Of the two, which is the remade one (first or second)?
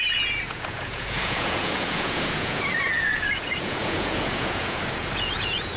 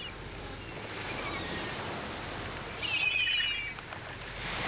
first